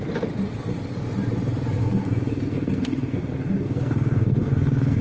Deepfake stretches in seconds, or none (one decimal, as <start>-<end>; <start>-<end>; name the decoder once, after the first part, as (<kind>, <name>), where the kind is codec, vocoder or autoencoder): 1.8-5.0 (codec, SNAC)

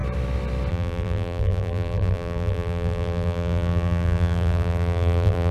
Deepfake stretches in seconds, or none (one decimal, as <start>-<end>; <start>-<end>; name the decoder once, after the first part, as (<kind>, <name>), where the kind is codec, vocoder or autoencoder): 0.7-5.5 (vocoder, BigVGAN v2)

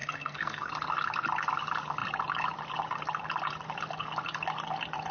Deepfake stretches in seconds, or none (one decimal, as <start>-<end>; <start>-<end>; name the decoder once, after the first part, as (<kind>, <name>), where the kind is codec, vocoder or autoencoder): 0.0-0.7 (codec, SNAC)

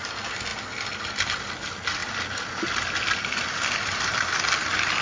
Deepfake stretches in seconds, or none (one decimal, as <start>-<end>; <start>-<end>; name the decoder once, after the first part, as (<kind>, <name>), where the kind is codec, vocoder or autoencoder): none

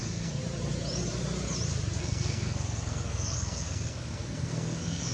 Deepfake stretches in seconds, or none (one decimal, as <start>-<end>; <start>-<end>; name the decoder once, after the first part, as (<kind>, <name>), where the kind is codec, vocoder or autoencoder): 0.0-0.4 (codec, SNAC); 2.0-5.1